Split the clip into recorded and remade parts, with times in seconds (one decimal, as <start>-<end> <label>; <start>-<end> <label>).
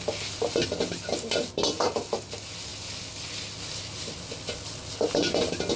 0.0-5.8 recorded